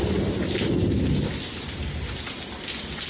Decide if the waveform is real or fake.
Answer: real